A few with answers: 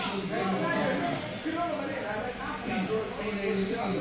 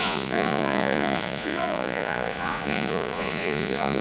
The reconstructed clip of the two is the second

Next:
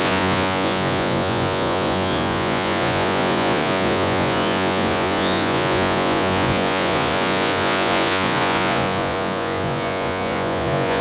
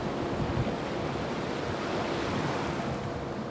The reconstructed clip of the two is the first